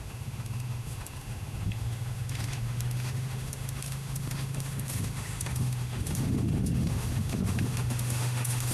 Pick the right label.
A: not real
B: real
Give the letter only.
A